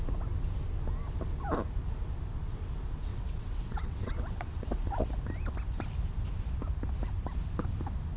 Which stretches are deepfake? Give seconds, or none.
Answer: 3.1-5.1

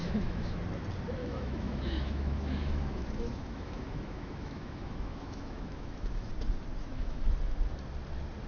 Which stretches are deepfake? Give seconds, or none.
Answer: 0.0-0.6; 1.2-6.3; 6.8-7.3

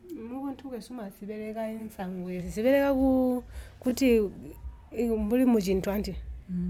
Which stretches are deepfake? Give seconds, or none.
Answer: 1.8-2.4

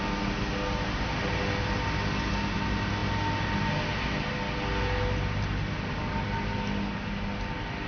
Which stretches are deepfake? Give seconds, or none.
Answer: none